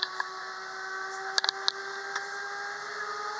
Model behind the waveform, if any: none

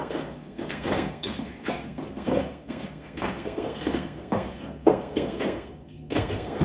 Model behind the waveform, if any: codec, SNAC